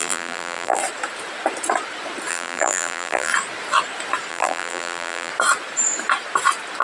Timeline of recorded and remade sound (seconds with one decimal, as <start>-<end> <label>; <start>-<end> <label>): 0.0-0.8 remade; 0.8-2.3 recorded; 2.3-3.3 remade; 3.3-4.3 recorded; 4.3-5.3 remade; 5.3-6.8 recorded